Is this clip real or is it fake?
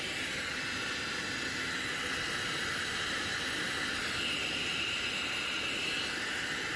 real